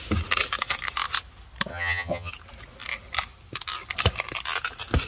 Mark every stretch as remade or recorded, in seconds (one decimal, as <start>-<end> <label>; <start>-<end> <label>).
0.0-1.7 recorded; 1.7-2.3 remade; 2.3-5.1 recorded